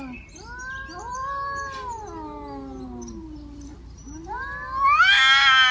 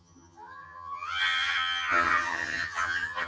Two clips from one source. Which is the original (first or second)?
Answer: first